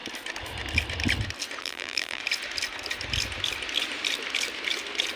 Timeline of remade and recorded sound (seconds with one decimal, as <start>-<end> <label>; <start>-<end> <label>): 0.0-1.6 recorded; 1.6-2.2 remade; 2.2-5.2 recorded